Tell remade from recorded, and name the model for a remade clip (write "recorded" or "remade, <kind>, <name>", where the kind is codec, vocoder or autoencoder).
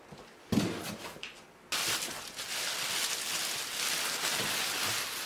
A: recorded